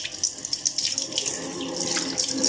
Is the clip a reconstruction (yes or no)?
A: no